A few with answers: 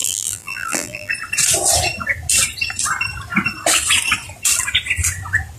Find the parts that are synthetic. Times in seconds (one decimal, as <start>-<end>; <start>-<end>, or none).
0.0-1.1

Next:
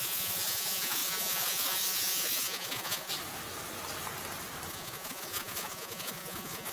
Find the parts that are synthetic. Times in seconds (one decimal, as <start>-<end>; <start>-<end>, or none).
0.0-3.1; 4.7-6.7

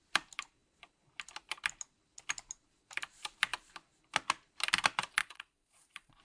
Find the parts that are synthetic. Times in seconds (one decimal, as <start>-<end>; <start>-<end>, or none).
5.2-6.2

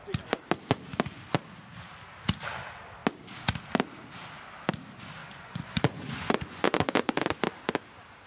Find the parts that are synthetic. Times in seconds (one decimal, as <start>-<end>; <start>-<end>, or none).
5.2-7.4

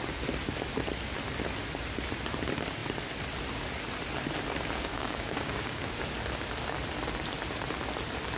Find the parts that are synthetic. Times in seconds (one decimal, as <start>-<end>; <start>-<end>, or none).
4.9-6.0